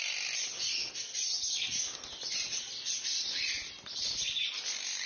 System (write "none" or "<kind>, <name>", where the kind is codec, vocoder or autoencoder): none